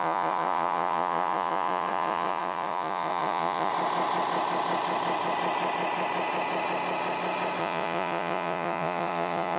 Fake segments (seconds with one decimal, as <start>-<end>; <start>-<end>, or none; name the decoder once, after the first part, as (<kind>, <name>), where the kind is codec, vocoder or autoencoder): 0.0-3.7 (vocoder, Vocos); 7.6-9.6